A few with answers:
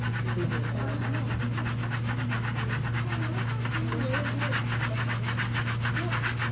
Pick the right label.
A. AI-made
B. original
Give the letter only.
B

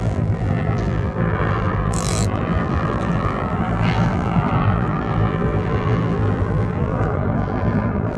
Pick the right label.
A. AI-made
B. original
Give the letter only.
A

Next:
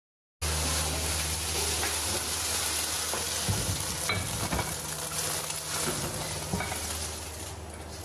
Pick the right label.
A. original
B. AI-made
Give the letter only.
A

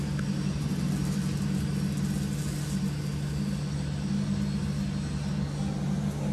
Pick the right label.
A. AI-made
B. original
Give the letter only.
B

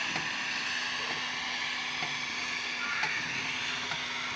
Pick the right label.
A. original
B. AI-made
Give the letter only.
A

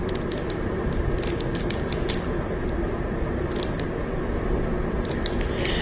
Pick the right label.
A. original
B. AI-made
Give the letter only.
A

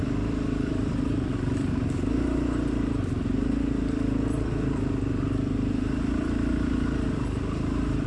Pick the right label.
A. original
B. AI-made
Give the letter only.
B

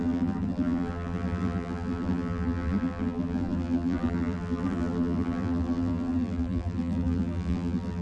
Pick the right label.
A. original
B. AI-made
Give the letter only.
B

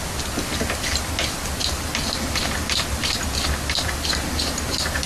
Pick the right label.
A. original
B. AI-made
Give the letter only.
A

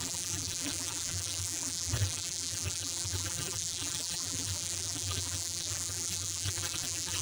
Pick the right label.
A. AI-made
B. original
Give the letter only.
A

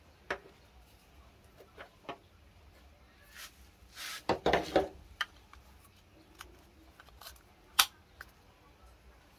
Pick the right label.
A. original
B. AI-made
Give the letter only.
A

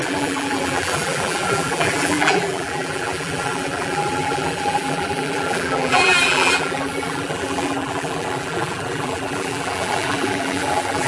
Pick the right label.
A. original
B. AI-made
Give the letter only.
B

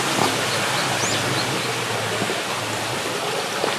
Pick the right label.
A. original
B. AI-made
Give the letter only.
A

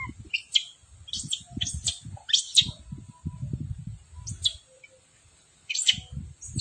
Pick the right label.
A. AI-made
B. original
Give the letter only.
B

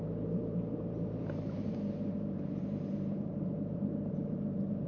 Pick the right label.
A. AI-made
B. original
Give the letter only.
A